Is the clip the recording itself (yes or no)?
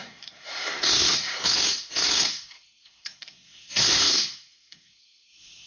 no